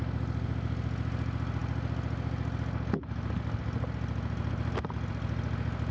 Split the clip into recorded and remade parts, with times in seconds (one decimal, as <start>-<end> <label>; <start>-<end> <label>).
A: 0.0-5.9 recorded